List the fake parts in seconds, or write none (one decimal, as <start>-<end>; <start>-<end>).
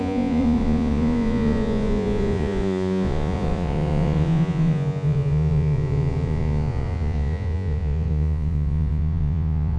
0.0-9.8